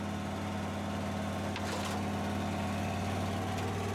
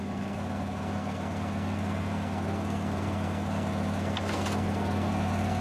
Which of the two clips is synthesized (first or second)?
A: second